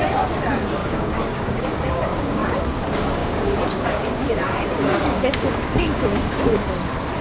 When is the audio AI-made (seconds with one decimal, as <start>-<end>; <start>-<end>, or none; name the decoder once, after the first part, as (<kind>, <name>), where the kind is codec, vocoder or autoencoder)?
0.8-2.6 (codec, DAC); 3.2-6.7